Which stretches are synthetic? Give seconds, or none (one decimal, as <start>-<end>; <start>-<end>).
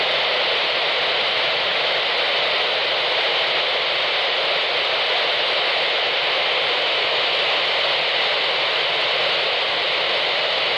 none